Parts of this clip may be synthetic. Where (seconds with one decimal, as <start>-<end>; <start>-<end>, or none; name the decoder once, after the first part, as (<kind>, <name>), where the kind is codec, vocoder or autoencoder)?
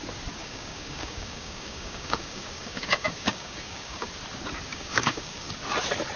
0.4-4.1 (codec, DAC); 4.7-5.5